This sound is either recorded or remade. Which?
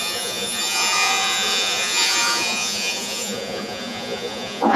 remade